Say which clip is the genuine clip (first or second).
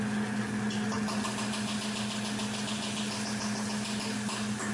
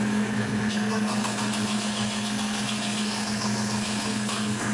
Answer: first